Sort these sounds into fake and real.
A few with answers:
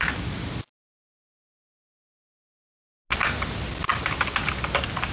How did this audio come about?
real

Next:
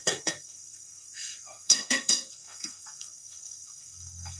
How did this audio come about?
fake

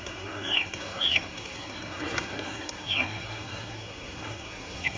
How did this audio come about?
fake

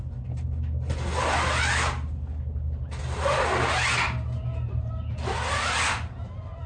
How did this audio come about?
real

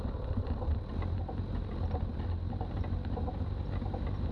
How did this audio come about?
real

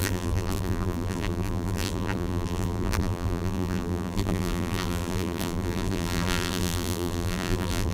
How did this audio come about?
fake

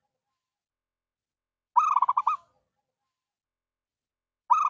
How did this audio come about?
real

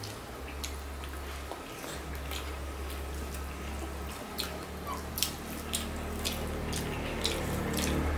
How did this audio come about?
real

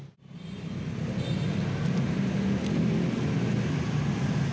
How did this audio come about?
real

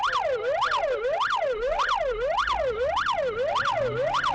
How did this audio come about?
real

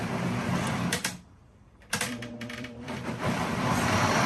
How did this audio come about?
fake